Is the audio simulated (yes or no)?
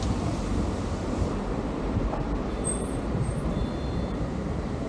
yes